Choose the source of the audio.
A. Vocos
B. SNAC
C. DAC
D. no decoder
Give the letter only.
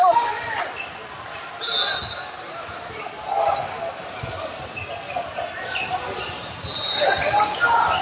D